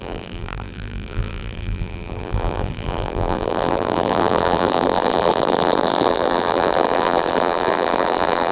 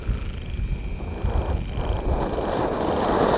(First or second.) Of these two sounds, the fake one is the first